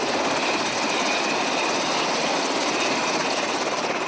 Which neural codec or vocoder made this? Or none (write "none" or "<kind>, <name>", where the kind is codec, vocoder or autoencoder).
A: none